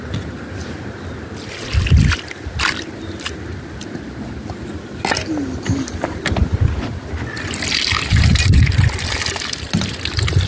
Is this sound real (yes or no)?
yes